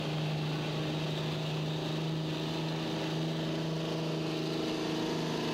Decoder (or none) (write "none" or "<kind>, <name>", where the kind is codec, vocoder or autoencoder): none